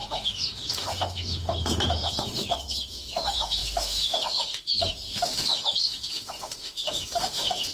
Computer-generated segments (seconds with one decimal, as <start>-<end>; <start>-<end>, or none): 0.0-7.7